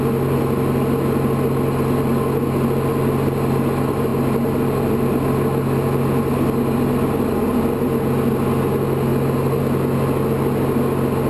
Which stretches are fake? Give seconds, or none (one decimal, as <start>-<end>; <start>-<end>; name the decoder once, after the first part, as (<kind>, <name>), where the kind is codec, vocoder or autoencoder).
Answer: none